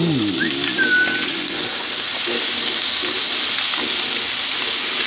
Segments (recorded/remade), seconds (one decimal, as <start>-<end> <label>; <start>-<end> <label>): 0.0-1.3 recorded; 1.3-1.9 remade; 1.9-5.1 recorded